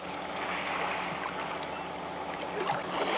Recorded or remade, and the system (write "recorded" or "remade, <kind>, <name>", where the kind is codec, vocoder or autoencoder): recorded